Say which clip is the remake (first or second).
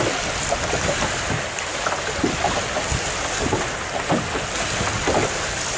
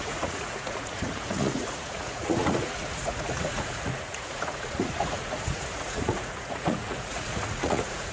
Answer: second